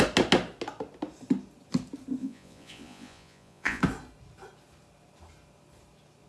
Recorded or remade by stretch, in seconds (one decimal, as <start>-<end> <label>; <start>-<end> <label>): 0.0-2.2 recorded; 2.2-3.8 remade; 3.8-6.3 recorded